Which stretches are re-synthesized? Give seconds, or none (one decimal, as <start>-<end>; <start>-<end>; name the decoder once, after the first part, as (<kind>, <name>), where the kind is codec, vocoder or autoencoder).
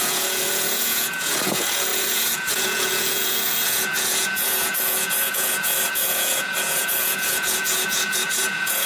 0.0-8.9 (vocoder, Vocos)